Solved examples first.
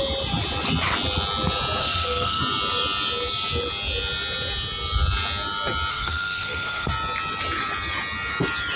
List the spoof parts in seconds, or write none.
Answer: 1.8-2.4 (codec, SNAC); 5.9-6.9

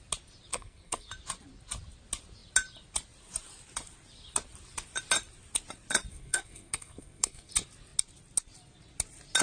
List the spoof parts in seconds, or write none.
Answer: 0.5-1.1 (codec, SNAC); 6.1-7.5

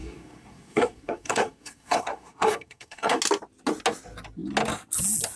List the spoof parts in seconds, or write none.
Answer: 0.0-3.2 (codec, SNAC)

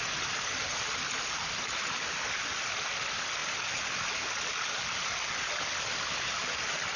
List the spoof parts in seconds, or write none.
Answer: none

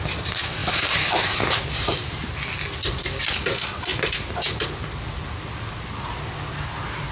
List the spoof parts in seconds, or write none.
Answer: none